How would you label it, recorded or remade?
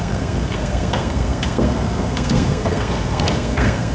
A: remade